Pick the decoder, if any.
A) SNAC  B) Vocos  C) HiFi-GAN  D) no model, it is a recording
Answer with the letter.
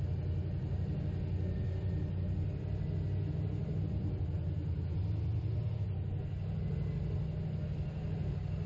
D